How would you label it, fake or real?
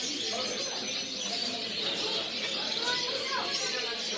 real